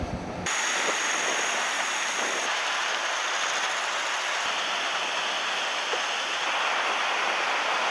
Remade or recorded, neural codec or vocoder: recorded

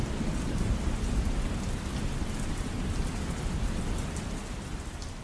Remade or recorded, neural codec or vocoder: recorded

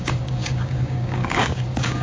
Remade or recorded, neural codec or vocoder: remade, codec, DAC